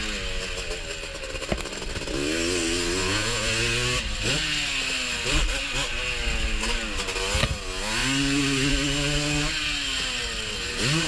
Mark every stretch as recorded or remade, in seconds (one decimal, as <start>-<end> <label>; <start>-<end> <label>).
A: 0.0-3.0 recorded; 3.0-3.5 remade; 3.5-11.1 recorded